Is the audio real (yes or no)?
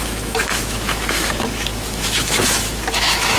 no